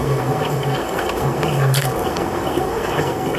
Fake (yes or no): yes